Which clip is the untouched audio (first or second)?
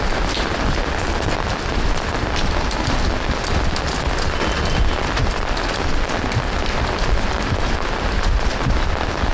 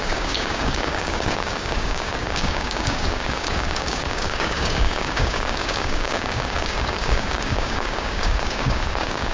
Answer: first